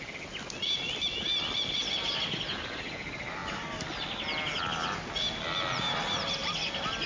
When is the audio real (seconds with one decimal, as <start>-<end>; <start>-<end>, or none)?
0.0-7.1